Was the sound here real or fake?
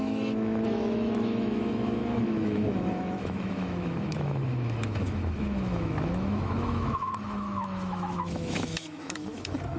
fake